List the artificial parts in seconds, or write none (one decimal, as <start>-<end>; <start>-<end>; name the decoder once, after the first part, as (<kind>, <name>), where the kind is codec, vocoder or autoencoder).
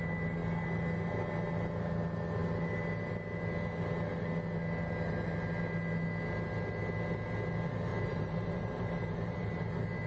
7.9-9.7 (vocoder, BigVGAN v2)